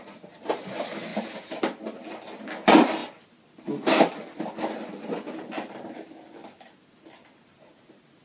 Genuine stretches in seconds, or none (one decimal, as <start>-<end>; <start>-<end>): 0.0-8.2